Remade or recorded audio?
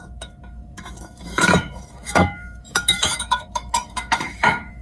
remade